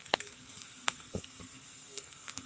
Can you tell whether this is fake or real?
fake